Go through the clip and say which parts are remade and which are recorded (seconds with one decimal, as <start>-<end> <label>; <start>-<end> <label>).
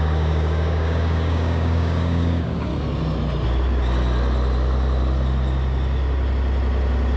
0.0-2.7 remade; 2.7-7.2 recorded